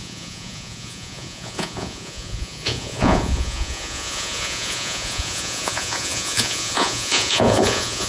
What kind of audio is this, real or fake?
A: fake